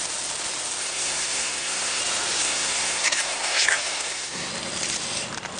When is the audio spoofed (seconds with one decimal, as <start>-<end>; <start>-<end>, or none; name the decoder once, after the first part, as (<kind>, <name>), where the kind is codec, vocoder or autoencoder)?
0.8-2.0 (codec, SNAC); 2.4-4.5